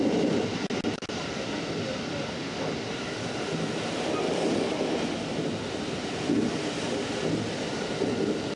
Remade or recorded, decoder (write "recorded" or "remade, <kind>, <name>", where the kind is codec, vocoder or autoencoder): recorded